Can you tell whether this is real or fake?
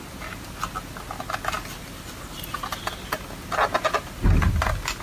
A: real